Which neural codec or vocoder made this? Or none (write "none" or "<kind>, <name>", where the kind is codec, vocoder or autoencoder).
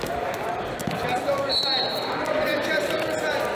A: none